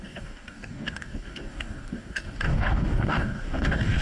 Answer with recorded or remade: remade